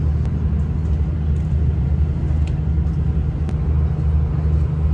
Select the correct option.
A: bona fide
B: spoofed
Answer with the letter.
A